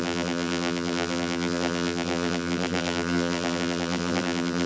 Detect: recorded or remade remade